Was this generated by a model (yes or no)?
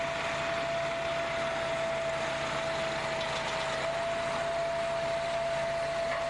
no